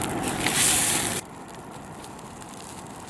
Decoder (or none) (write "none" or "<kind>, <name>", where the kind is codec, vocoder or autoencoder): vocoder, BigVGAN v2